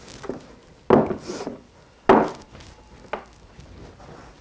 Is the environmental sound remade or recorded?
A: recorded